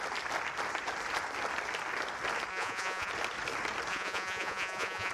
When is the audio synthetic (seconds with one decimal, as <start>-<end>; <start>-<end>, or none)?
2.5-3.1; 3.9-5.1